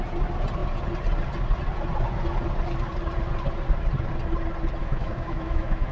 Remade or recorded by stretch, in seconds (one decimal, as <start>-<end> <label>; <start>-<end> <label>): 0.0-4.8 recorded; 4.8-5.9 remade